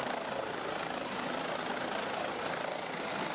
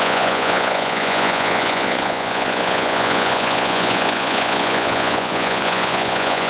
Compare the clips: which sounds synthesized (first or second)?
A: second